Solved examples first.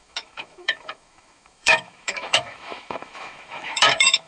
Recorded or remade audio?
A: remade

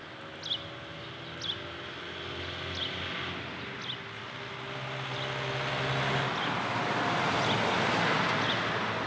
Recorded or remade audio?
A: recorded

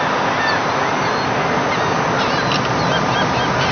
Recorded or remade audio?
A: recorded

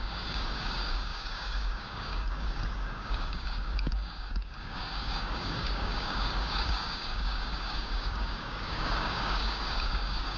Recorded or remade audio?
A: remade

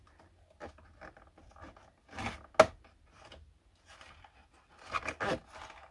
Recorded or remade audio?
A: recorded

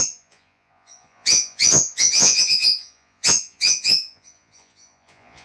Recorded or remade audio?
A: remade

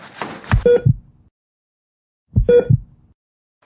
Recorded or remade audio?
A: recorded